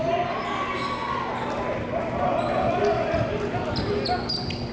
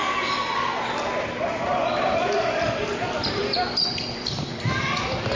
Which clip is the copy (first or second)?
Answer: second